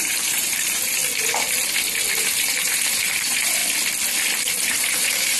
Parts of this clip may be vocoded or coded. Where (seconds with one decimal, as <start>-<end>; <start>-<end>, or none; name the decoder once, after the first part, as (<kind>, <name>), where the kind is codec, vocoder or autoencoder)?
0.0-1.0 (vocoder, BigVGAN v2); 2.2-3.6; 4.7-5.4